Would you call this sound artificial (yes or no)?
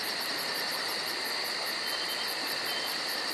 no